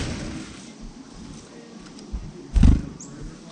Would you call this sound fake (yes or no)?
no